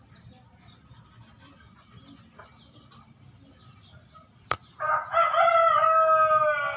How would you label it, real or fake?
real